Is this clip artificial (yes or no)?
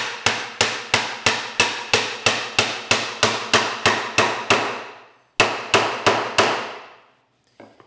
no